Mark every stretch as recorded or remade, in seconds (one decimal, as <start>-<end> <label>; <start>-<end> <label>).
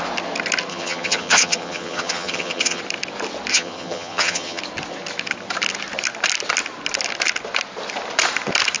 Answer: 0.0-0.7 recorded; 0.7-2.8 remade; 2.8-3.5 recorded; 3.5-4.6 remade; 4.6-8.8 recorded